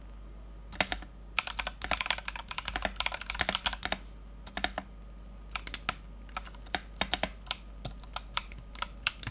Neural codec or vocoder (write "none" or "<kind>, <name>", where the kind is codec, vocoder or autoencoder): none